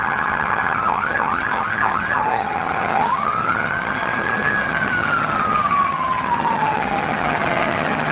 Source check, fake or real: fake